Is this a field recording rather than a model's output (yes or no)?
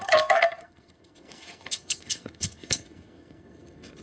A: no